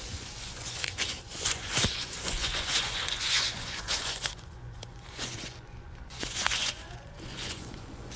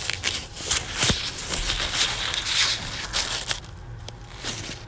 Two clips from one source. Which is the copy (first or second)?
first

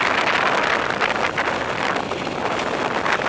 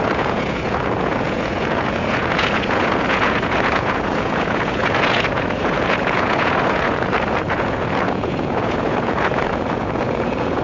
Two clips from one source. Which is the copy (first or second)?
second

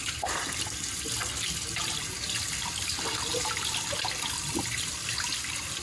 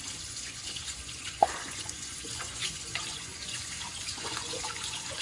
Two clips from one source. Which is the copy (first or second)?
second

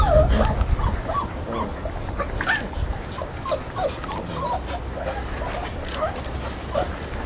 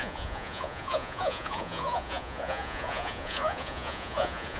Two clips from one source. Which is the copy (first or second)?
second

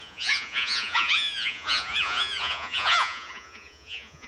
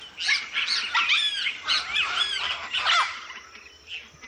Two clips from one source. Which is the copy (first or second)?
first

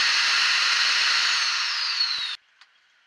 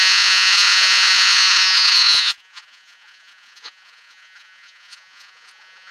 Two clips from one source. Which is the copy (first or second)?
second